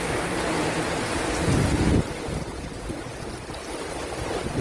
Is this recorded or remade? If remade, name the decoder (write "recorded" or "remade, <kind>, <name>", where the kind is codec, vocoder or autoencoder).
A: recorded